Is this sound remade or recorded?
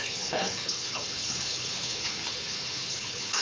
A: remade